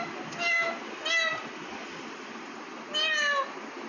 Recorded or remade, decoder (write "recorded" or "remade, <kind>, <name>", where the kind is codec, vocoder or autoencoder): recorded